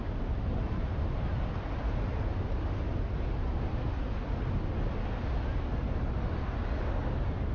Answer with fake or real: real